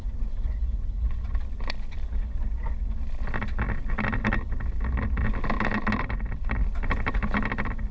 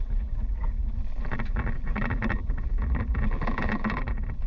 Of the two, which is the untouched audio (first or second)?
first